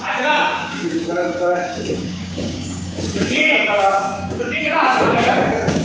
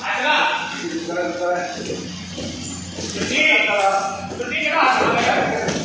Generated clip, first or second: first